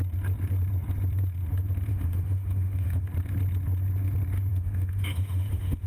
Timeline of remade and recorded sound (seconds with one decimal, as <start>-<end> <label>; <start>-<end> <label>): 0.0-1.9 recorded; 1.9-3.1 remade; 3.1-4.5 recorded; 4.5-5.9 remade